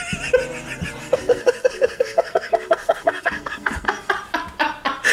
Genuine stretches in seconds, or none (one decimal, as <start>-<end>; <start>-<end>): 0.0-1.0; 4.1-5.1

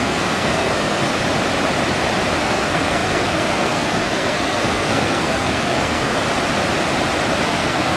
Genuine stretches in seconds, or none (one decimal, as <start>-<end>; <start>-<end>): 1.1-2.4; 6.1-7.4

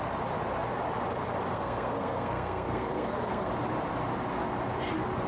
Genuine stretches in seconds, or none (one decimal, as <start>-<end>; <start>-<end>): 0.0-1.5; 3.5-5.3

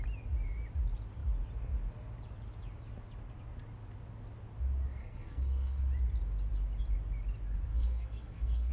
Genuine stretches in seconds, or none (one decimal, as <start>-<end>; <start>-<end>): 0.0-5.0; 5.8-7.7